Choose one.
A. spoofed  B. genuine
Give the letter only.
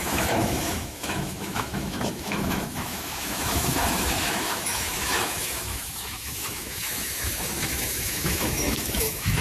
A